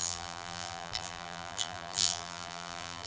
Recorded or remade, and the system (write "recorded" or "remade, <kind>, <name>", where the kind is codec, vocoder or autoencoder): remade, vocoder, BigVGAN v2